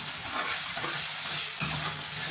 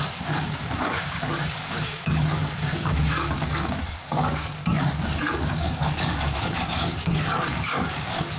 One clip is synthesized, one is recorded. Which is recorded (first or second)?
first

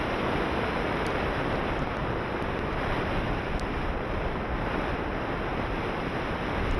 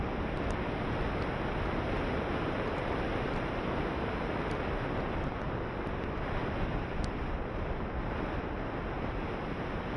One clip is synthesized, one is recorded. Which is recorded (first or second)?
second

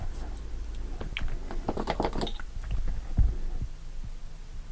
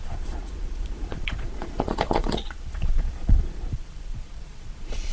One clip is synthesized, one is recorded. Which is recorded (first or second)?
first